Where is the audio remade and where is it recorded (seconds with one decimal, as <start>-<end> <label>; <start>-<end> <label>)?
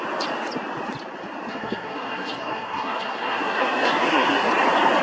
0.0-1.5 recorded; 1.5-4.5 remade; 4.5-5.0 recorded